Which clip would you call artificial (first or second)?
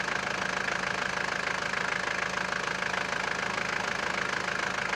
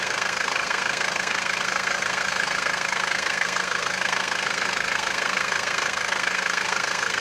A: second